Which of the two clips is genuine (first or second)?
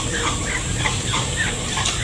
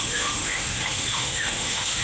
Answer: first